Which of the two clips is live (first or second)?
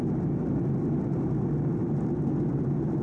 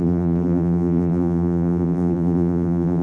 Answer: first